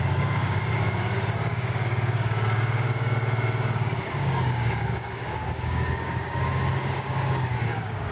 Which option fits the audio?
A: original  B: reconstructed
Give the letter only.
B